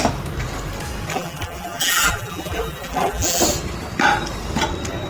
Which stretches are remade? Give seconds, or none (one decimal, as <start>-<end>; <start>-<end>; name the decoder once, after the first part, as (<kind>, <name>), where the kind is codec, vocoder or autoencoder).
1.1-3.4 (vocoder, BigVGAN v2)